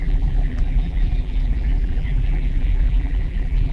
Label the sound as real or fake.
fake